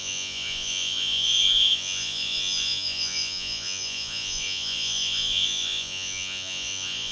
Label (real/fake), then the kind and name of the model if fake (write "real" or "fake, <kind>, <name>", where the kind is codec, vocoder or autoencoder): fake, vocoder, Vocos